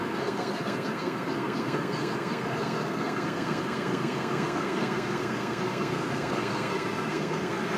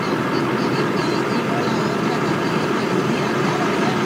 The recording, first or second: second